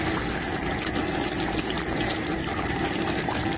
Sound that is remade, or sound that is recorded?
recorded